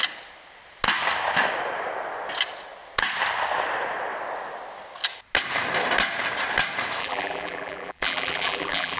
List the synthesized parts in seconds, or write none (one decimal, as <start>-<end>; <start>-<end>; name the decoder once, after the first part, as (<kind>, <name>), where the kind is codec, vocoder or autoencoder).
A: 7.0-9.0 (vocoder, BigVGAN v2)